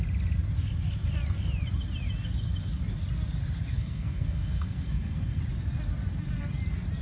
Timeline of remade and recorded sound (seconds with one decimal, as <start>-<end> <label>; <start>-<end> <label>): 0.0-3.7 recorded; 3.7-5.4 remade; 5.4-7.0 recorded